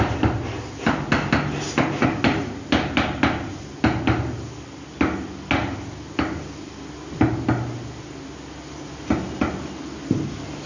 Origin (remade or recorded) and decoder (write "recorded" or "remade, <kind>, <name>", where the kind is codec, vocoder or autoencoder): recorded